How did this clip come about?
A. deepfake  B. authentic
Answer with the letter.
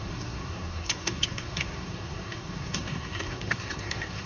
A